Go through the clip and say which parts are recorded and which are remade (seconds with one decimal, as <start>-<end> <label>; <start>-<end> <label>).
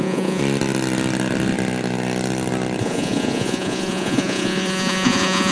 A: 0.0-0.4 remade; 0.4-2.8 recorded; 2.8-5.5 remade